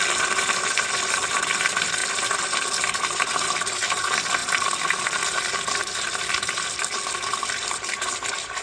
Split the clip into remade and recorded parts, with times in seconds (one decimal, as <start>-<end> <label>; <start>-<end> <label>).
0.0-2.0 remade; 2.0-3.0 recorded; 3.0-4.4 remade; 4.4-6.0 recorded; 6.0-8.6 remade